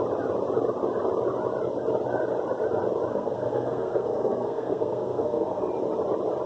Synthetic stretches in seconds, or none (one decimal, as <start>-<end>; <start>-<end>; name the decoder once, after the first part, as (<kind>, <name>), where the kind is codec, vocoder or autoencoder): 3.1-5.7 (codec, SNAC)